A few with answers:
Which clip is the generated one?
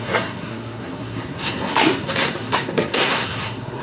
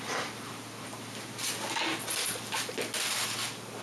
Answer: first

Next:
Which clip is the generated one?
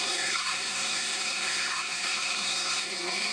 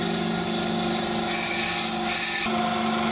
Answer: first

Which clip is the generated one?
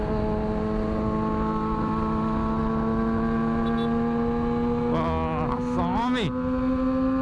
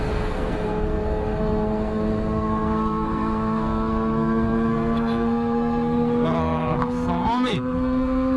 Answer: second